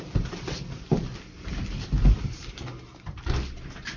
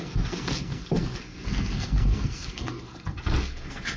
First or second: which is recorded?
first